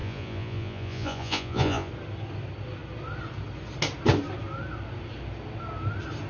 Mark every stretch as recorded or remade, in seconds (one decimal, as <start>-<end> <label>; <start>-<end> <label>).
0.0-1.9 remade; 1.9-6.3 recorded